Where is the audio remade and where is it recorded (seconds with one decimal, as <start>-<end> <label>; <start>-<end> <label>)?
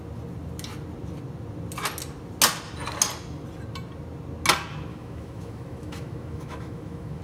0.0-4.9 recorded; 4.9-7.2 remade